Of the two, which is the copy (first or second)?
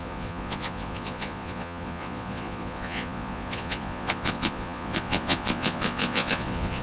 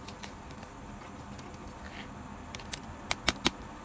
first